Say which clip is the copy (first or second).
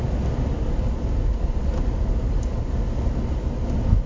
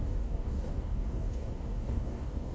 second